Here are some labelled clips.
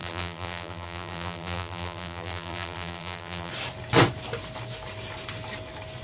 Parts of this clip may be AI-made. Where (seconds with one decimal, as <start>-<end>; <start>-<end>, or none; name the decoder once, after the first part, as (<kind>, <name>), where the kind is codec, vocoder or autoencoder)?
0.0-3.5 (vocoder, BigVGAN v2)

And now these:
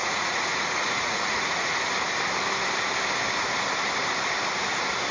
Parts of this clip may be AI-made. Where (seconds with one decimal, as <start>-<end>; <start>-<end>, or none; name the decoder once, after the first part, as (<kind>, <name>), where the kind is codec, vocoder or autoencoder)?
0.0-1.7 (vocoder, Vocos)

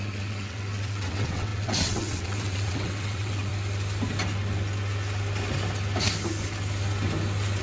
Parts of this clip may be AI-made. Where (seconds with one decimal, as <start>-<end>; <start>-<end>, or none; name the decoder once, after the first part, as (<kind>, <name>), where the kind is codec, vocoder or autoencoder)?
0.0-3.5 (vocoder, WaveNeXt)

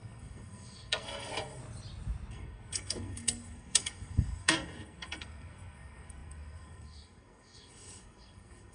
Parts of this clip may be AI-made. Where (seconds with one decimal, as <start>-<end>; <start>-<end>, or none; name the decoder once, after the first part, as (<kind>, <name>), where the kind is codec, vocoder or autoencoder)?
0.0-1.6 (codec, SNAC); 2.3-8.7

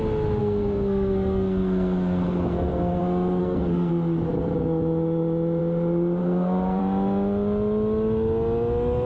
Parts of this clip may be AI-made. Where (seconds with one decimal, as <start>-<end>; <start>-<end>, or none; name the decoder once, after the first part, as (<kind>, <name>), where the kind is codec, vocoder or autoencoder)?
0.4-3.0 (codec, SNAC); 3.4-3.9; 6.2-6.8

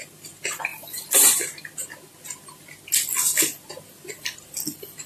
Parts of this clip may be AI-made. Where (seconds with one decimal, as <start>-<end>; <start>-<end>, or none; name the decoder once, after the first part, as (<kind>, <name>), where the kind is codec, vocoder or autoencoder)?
none